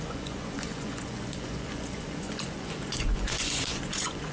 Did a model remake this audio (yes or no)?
yes